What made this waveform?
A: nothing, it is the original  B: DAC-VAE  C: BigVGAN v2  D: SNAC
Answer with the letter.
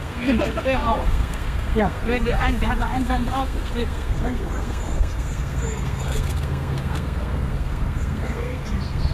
D